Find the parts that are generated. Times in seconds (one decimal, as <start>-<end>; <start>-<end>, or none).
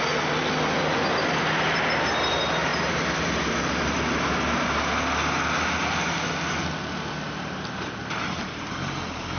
none